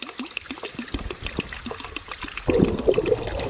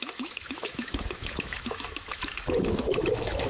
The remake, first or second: second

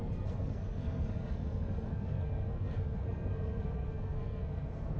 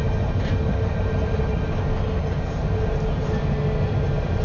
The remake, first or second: first